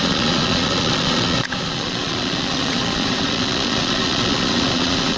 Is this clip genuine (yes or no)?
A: no